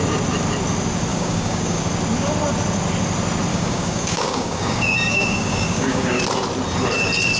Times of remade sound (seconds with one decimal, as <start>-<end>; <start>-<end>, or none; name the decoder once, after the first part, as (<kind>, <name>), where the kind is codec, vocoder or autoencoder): 1.1-1.8 (codec, DAC); 3.5-6.2